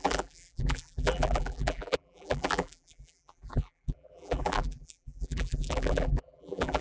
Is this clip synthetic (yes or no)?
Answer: yes